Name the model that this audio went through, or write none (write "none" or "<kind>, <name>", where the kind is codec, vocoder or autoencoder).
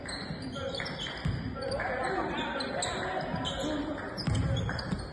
none